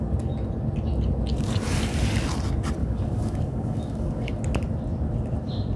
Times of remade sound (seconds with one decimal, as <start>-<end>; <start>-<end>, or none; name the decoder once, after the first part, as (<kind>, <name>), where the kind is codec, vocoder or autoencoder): 2.8-4.3 (codec, DAC)